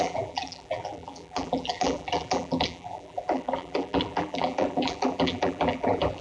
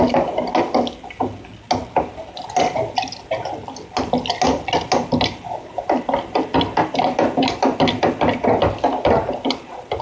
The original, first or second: second